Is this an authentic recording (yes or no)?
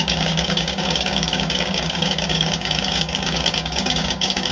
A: no